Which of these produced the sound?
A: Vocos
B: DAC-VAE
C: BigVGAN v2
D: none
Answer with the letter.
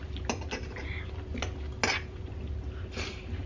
D